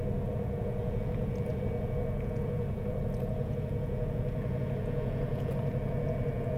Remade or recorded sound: remade